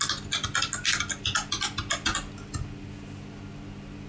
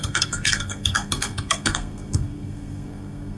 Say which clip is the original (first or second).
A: first